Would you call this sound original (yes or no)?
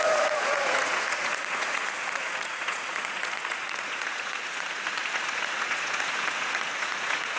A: no